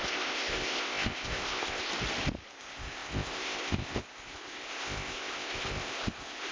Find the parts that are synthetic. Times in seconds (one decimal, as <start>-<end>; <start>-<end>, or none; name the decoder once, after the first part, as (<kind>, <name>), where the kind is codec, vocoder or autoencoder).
0.0-1.9 (codec, ZipCodec); 2.5-6.5